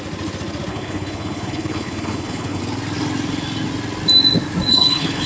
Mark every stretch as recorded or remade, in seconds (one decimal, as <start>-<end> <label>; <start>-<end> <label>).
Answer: 0.0-0.7 recorded; 0.7-2.6 remade; 2.6-4.7 recorded; 4.7-5.3 remade